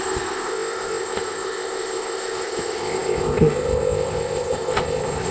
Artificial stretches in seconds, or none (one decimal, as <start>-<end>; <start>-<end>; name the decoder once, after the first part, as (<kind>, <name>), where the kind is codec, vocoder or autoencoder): 0.0-5.3 (codec, ZipCodec)